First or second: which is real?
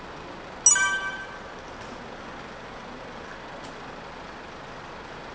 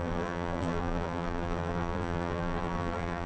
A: first